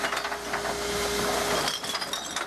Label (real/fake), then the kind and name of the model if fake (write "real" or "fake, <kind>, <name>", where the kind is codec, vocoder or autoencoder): real